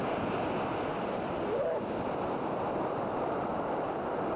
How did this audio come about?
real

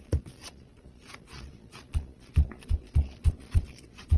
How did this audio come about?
fake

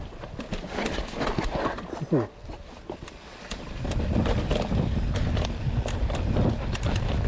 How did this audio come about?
real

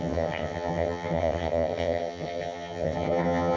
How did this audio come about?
fake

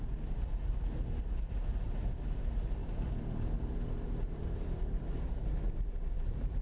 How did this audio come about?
fake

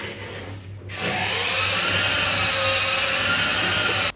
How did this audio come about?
real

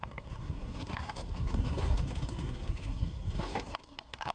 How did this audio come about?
fake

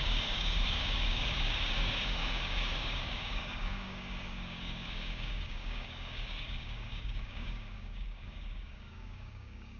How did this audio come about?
fake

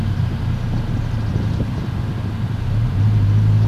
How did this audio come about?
real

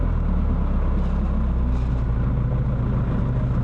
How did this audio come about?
real